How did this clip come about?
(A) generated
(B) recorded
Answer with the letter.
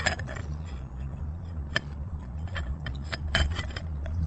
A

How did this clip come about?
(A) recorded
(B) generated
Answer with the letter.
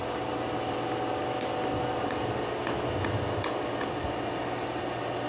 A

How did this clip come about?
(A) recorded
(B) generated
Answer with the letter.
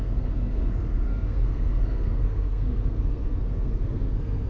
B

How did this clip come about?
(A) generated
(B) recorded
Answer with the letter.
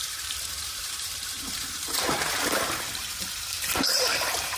A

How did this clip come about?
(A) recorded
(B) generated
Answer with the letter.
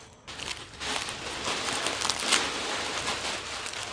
A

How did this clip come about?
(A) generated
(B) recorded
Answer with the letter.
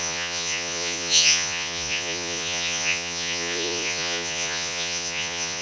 A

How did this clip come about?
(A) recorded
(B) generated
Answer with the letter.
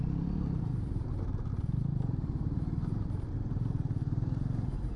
B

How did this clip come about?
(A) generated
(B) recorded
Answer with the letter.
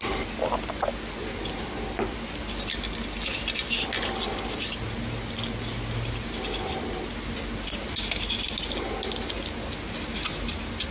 B